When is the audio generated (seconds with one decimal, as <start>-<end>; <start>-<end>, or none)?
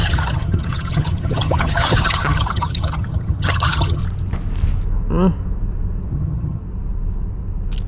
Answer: 0.0-4.0; 6.1-6.6